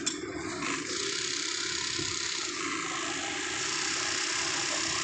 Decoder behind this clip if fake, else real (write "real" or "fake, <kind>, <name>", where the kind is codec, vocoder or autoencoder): real